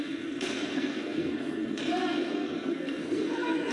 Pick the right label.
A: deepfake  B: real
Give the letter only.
A